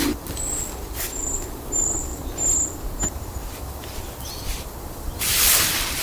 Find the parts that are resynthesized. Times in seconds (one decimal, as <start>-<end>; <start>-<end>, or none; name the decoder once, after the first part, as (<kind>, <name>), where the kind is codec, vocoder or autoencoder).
none